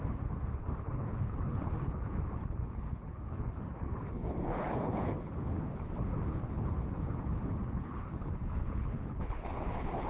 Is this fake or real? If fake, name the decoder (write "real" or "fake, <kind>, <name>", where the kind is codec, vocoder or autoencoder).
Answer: fake, codec, HILCodec